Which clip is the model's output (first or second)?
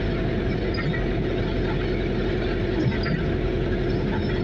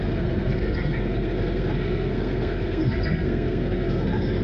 second